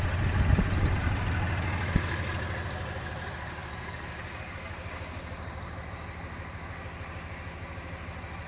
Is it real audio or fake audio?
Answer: real